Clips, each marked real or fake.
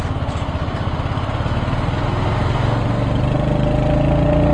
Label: real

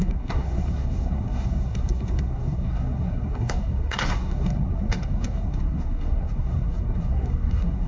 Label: fake